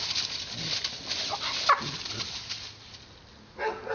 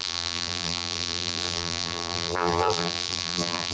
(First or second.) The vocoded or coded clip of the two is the second